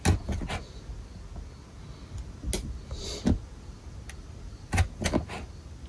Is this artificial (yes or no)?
no